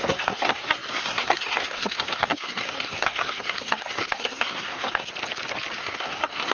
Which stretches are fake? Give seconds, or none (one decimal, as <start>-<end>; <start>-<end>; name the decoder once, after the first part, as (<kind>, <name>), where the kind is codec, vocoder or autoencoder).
0.0-5.1 (codec, SNAC); 5.8-6.5